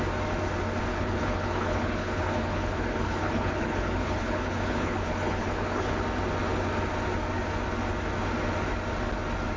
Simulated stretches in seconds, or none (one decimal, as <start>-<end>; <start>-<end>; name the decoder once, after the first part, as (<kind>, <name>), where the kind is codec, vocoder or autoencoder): 0.9-5.9 (codec, HILCodec)